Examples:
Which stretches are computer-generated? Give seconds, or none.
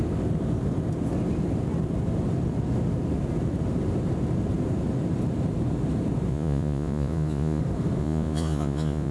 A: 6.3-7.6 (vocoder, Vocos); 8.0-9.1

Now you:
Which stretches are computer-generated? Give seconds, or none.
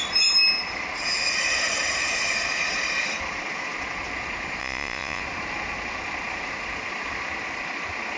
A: 4.6-5.2 (vocoder, Vocos)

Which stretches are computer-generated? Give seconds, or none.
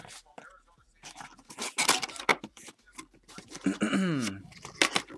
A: none